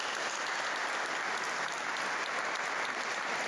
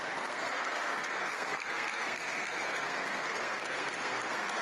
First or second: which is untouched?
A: first